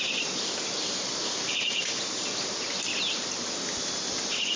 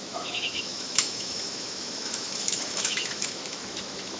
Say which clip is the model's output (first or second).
second